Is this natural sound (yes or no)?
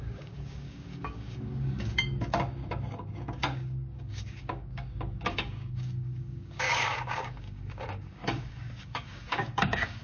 no